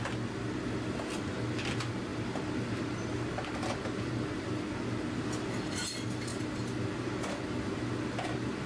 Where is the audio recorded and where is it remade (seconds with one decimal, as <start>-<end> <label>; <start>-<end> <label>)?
0.0-8.7 recorded